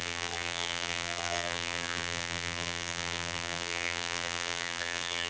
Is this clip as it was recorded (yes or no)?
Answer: no